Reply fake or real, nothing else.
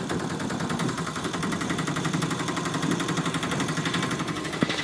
fake